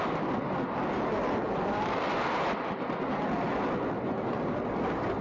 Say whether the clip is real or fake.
real